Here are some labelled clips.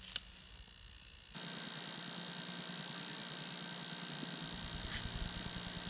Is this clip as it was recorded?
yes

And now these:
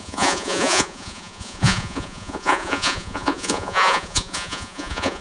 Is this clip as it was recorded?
no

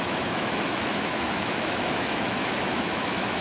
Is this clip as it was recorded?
no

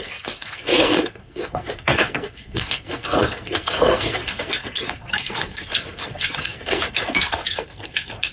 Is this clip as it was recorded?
no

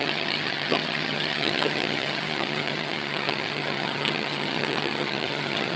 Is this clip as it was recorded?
no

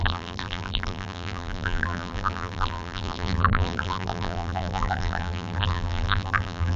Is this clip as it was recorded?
no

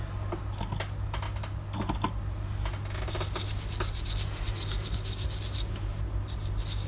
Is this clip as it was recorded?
yes